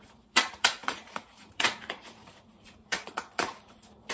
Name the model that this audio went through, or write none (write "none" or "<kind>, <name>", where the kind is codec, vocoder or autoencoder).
vocoder, Vocos